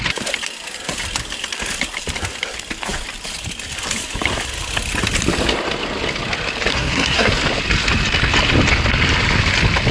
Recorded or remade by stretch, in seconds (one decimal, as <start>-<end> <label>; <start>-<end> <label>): 0.0-6.7 recorded; 6.7-7.3 remade; 7.3-9.9 recorded